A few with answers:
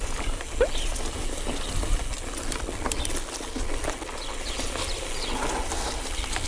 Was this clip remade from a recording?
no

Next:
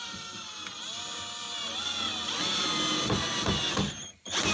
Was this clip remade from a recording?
no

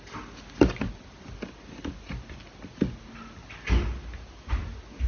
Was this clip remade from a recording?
no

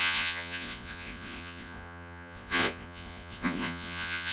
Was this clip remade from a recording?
yes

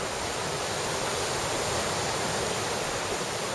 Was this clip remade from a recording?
no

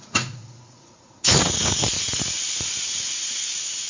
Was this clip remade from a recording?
yes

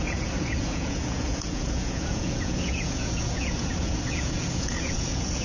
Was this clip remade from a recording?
yes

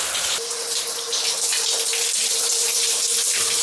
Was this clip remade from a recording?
no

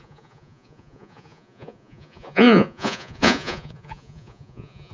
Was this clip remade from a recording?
yes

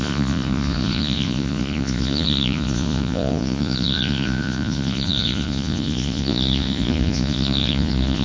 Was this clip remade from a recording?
yes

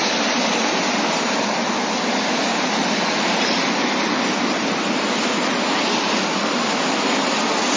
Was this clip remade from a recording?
no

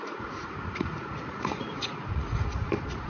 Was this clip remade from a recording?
yes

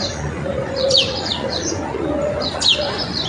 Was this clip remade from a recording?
yes